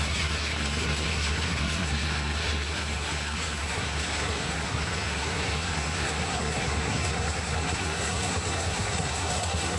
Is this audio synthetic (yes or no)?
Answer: yes